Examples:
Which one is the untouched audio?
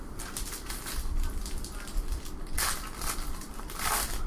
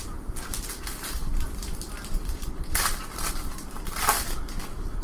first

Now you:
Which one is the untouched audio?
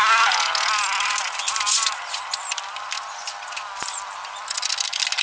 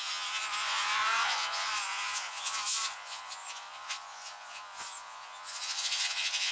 first